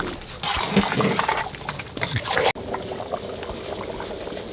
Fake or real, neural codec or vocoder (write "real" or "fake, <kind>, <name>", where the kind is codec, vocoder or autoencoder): real